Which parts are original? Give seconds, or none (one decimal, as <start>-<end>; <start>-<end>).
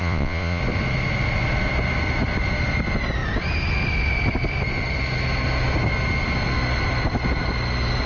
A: 0.6-8.1